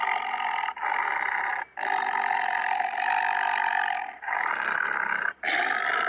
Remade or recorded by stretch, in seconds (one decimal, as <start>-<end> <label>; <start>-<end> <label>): 0.0-6.1 recorded